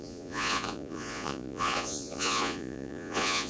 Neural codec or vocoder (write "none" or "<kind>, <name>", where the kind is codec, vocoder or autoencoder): vocoder, Vocos